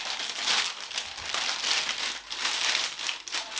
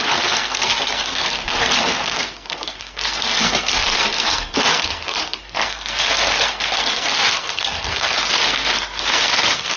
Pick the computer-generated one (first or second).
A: second